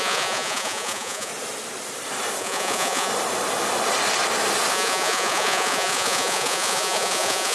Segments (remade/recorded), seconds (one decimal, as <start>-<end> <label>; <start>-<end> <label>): 0.0-1.3 remade; 1.3-2.4 recorded; 2.4-3.1 remade; 3.1-4.7 recorded; 4.7-7.5 remade